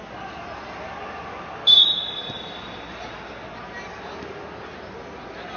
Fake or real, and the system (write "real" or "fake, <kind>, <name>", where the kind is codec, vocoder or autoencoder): real